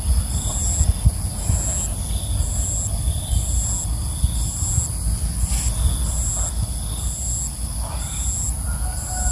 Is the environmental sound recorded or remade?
recorded